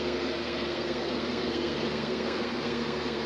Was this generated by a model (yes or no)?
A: yes